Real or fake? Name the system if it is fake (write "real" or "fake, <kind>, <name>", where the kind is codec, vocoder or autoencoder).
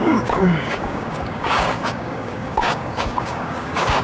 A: fake, codec, DAC